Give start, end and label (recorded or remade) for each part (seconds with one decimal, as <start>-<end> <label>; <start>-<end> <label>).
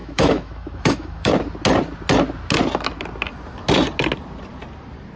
0.0-1.3 remade; 1.3-5.2 recorded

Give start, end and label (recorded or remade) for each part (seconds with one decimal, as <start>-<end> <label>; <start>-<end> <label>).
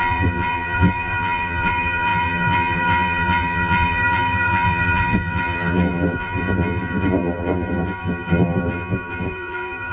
0.0-9.9 remade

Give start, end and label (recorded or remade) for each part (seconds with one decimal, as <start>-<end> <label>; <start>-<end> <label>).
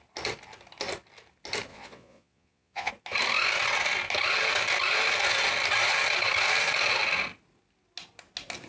0.0-1.7 recorded; 1.7-2.9 remade; 2.9-8.7 recorded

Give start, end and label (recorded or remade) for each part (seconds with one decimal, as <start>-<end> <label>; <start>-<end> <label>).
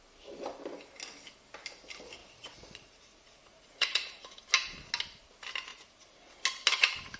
0.0-2.2 recorded; 2.2-4.4 remade; 4.4-5.7 recorded; 5.7-6.3 remade; 6.3-7.2 recorded